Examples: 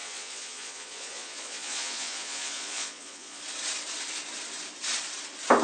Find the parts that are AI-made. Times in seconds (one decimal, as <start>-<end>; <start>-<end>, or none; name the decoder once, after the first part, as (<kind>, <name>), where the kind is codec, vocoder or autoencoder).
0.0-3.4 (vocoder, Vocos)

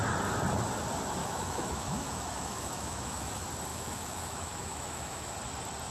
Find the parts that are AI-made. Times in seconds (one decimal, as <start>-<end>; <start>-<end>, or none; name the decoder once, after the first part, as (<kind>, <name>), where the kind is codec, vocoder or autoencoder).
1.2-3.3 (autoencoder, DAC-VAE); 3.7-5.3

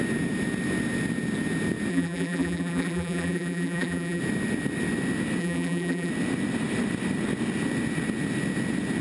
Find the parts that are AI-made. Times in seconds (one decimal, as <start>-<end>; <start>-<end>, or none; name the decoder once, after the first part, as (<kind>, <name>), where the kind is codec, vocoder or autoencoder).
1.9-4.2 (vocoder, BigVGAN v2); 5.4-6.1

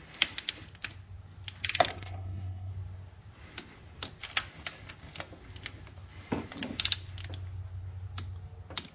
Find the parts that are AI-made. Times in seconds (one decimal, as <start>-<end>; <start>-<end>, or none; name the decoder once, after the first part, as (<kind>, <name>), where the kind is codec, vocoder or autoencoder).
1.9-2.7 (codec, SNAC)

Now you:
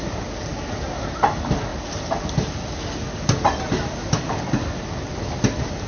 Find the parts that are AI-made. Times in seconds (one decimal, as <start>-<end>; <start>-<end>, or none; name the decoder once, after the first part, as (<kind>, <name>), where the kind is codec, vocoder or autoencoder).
none

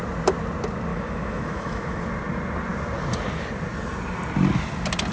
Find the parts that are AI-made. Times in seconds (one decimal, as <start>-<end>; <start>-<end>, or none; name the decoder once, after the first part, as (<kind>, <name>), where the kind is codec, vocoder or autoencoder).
0.9-2.0 (autoencoder, DAC-VAE)

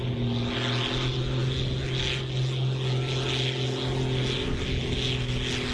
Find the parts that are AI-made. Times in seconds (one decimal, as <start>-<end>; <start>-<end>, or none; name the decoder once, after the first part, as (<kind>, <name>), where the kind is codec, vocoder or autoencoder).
none

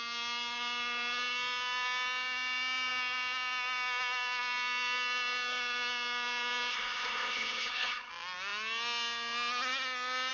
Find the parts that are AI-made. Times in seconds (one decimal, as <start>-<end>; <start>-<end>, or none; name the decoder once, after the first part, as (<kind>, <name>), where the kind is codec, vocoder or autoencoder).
6.7-8.1 (codec, HILCodec)